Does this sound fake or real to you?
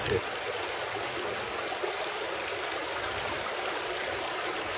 real